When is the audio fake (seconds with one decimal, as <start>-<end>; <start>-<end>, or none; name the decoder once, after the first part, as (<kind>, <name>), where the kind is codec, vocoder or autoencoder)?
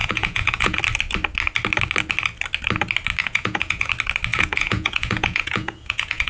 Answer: 0.0-0.8 (vocoder, Vocos); 3.2-3.9; 4.3-6.3